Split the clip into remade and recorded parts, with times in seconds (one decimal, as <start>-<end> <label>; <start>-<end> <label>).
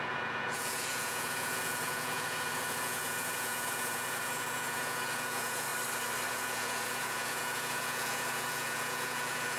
0.0-5.7 remade; 5.7-6.3 recorded; 6.3-9.6 remade